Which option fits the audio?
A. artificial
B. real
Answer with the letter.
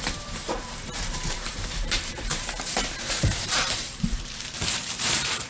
A